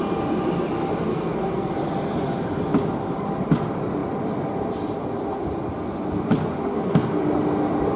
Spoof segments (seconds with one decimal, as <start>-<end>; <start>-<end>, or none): 1.1-1.7; 6.7-7.2